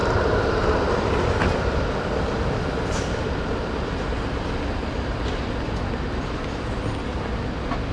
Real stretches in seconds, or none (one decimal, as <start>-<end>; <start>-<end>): 0.0-7.9